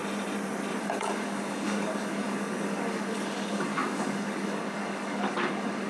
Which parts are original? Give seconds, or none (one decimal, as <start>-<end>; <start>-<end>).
0.0-0.8